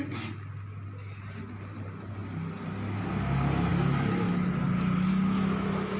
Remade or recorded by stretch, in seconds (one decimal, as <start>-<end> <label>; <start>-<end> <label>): 0.0-6.0 recorded